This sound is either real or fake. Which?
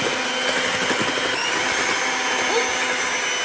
real